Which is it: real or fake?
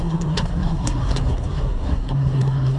fake